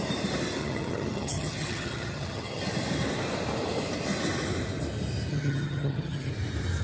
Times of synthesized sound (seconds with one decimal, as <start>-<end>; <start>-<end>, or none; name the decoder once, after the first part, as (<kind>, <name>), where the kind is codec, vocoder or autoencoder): 0.6-2.6 (vocoder, HiFi-GAN); 5.3-6.3